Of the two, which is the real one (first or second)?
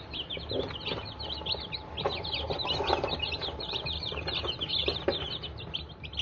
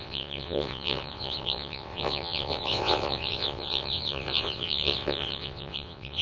first